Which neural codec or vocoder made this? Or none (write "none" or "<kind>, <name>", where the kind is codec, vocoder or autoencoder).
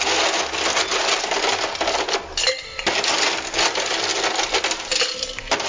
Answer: none